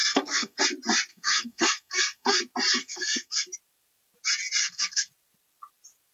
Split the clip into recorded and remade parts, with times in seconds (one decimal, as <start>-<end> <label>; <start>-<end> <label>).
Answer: 0.0-0.6 remade; 0.6-1.1 recorded; 1.1-2.4 remade; 2.4-2.8 recorded; 2.8-3.5 remade; 3.5-4.6 recorded; 4.6-5.1 remade; 5.1-6.1 recorded